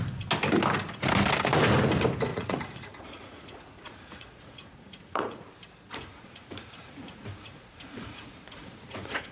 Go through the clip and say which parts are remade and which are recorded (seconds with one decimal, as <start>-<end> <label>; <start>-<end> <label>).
0.0-2.3 recorded; 2.3-5.5 remade; 5.5-5.9 recorded; 5.9-9.3 remade

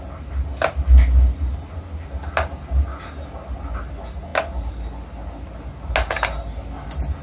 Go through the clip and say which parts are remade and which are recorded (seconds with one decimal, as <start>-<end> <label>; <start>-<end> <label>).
0.0-7.2 recorded